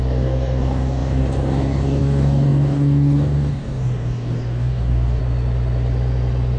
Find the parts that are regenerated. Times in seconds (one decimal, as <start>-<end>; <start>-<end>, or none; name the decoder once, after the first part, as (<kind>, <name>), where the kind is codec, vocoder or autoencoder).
0.0-5.2 (codec, DAC)